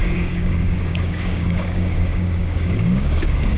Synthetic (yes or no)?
yes